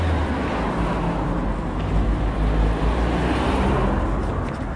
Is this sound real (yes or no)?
yes